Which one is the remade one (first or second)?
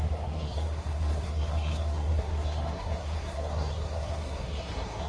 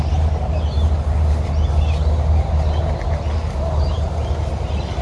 first